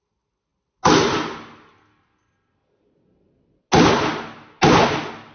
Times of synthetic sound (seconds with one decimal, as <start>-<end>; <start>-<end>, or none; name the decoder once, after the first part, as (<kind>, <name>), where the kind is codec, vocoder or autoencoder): none